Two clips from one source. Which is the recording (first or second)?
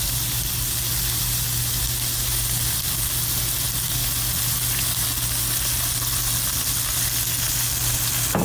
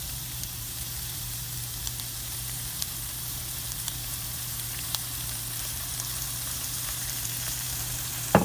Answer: first